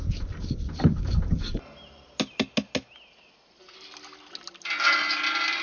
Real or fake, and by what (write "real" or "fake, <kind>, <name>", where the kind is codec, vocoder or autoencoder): real